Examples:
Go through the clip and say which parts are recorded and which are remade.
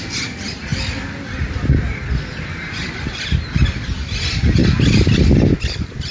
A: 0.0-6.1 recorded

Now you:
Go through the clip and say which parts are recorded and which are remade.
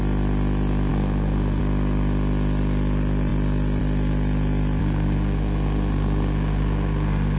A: 0.0-0.9 recorded; 0.9-1.6 remade; 1.6-4.8 recorded; 4.8-7.4 remade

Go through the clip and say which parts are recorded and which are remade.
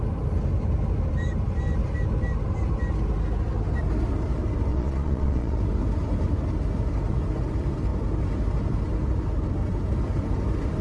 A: 0.0-4.7 recorded; 4.7-5.6 remade; 5.6-10.8 recorded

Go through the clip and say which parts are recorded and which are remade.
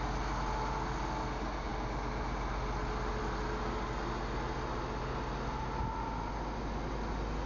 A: 0.0-7.5 recorded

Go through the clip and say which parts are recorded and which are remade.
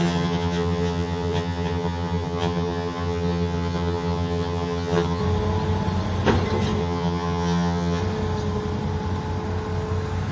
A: 0.0-5.2 remade; 5.2-6.8 recorded; 6.8-8.0 remade; 8.0-10.3 recorded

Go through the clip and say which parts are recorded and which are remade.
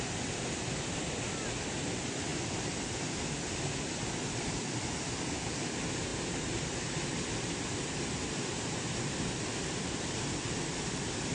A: 0.0-11.3 recorded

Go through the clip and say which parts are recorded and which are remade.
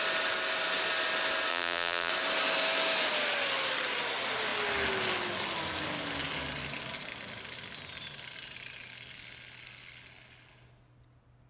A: 0.0-1.5 recorded; 1.5-2.1 remade; 2.1-11.5 recorded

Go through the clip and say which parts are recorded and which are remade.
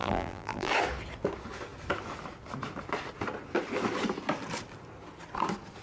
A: 0.0-0.7 remade; 0.7-5.8 recorded